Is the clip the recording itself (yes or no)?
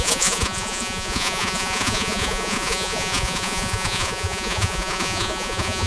no